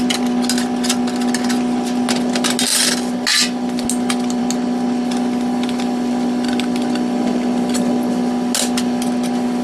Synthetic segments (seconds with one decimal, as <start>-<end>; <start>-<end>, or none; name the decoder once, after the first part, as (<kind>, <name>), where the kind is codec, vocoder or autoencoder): none